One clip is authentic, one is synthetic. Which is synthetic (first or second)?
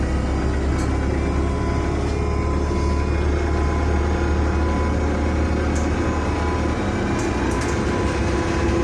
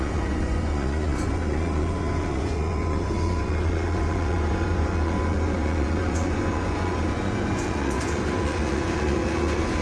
second